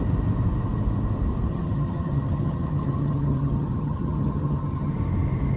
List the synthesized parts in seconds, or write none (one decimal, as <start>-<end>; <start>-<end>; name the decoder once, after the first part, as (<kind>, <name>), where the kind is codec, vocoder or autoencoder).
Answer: 1.5-4.9 (vocoder, HiFi-GAN)